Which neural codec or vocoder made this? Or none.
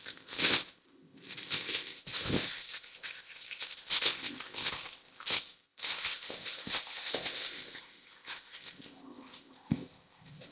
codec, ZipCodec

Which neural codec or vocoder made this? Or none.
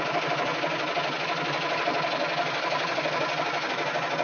none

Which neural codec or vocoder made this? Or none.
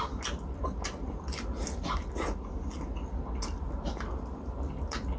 none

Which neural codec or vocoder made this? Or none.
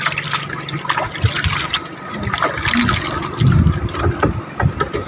none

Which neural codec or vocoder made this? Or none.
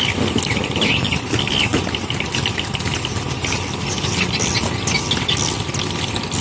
none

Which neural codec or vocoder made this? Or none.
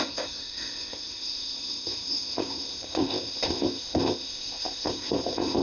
codec, ZipCodec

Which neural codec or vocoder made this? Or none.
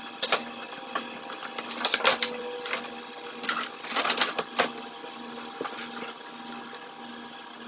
none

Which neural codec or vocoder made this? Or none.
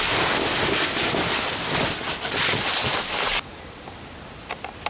none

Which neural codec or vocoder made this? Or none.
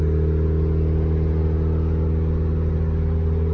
none